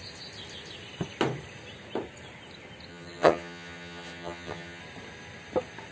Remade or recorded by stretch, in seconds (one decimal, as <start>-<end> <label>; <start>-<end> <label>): 0.0-2.9 recorded; 2.9-4.8 remade; 4.8-5.9 recorded